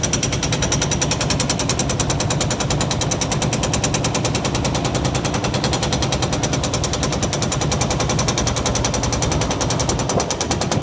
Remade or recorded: recorded